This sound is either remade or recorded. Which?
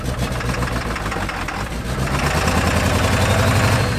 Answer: recorded